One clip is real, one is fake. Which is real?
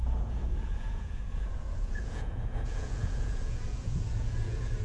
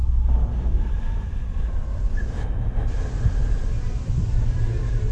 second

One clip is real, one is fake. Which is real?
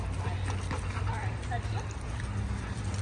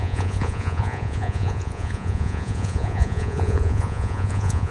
first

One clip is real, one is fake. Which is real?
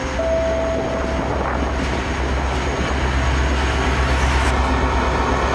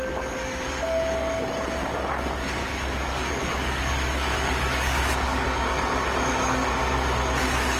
first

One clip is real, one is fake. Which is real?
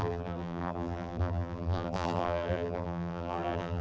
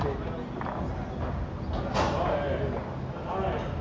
second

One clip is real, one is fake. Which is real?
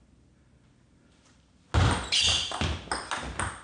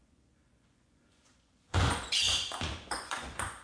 first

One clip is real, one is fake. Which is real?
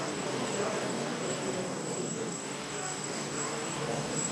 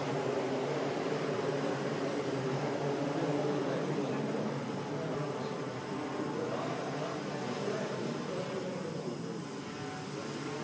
second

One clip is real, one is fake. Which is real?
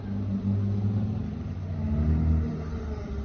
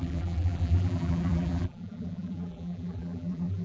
first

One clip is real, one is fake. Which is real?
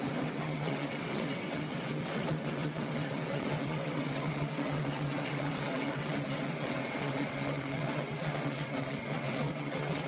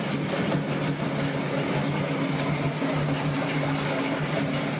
second